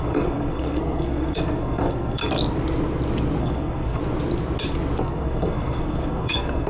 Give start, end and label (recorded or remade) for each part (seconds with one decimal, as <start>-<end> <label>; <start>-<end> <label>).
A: 0.0-2.2 remade; 2.2-3.4 recorded; 3.4-4.0 remade; 4.0-5.0 recorded; 5.0-6.7 remade